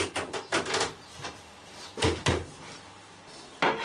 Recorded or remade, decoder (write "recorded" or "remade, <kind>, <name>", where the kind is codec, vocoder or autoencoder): recorded